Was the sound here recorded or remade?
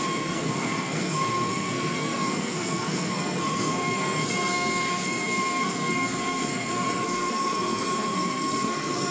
remade